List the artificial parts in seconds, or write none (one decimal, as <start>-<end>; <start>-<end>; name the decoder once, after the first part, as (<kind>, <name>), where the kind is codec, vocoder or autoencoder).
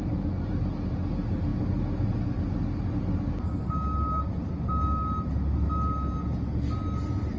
none